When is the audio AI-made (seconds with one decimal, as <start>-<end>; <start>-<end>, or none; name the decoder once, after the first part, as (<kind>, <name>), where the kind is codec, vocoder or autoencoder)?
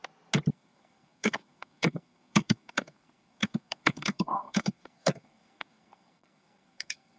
0.5-7.2 (codec, SNAC)